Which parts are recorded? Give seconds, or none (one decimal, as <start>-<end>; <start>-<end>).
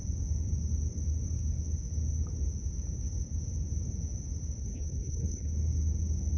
0.0-4.6; 5.5-6.4